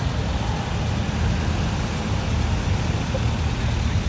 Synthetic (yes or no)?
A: no